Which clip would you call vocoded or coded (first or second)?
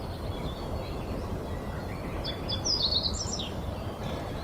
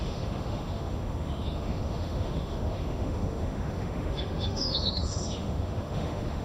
second